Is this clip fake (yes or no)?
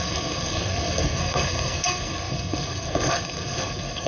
yes